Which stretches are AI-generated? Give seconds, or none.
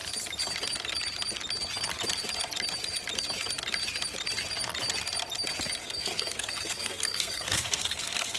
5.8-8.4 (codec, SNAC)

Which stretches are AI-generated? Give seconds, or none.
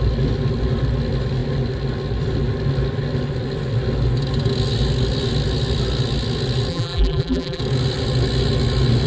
6.7-7.6 (vocoder, BigVGAN v2)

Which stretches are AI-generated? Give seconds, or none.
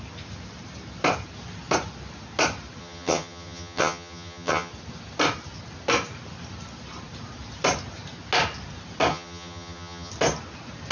2.8-4.7 (vocoder, HiFi-GAN); 9.1-10.1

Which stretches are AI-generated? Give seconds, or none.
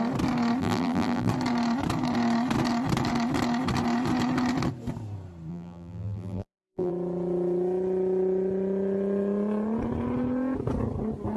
0.6-1.3 (vocoder, BigVGAN v2); 5.5-6.9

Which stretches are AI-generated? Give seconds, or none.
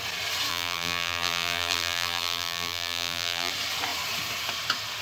0.5-3.5 (vocoder, BigVGAN v2)